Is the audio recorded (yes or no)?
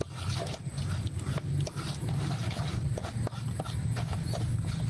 yes